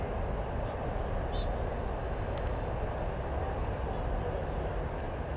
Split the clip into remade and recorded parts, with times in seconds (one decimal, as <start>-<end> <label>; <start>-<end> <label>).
0.0-2.0 recorded; 2.0-2.7 remade; 2.7-5.4 recorded